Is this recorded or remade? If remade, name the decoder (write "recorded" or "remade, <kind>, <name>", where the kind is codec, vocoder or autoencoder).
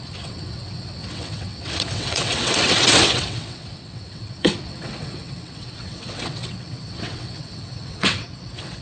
remade, vocoder, WaveNeXt